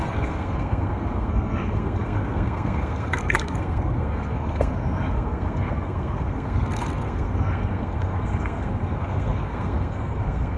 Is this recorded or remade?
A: remade